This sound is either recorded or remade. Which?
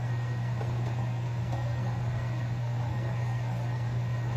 remade